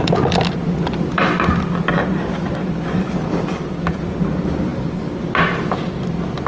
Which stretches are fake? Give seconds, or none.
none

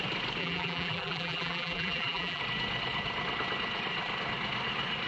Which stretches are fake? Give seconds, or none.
0.4-2.4 (vocoder, BigVGAN v2)

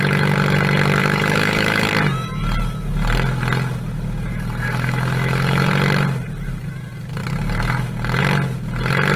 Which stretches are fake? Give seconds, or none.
1.0-1.9 (autoencoder, DAC-VAE); 4.3-5.7

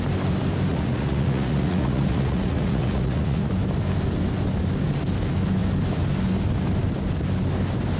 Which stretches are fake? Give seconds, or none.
0.7-3.5 (vocoder, Vocos)

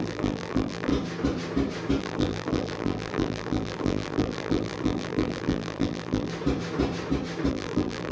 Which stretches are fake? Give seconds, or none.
0.0-0.9 (vocoder, BigVGAN v2); 2.0-6.3; 7.5-8.1

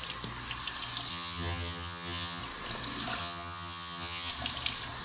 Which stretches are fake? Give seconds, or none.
1.1-2.4 (vocoder, HiFi-GAN); 3.2-4.3

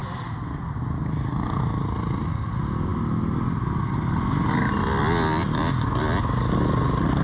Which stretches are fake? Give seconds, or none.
none